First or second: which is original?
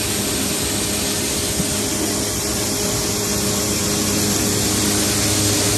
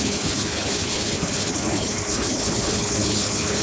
first